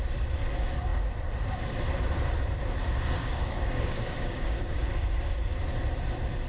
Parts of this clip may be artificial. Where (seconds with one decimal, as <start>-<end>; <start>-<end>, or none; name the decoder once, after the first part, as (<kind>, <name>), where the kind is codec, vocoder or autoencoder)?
3.2-4.9 (codec, DAC)